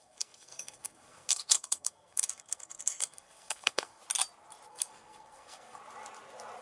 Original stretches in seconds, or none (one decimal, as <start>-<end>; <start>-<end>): 4.0-4.7; 5.8-6.6